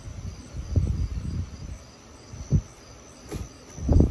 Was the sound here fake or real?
real